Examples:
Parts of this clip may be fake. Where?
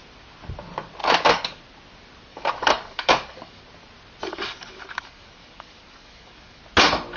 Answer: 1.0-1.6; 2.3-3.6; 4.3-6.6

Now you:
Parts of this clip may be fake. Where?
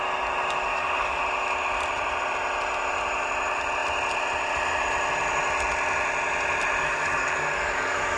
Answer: 0.7-1.2; 6.8-8.2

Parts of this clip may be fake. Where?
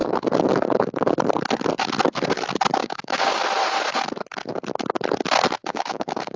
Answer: 2.8-3.4; 5.6-6.4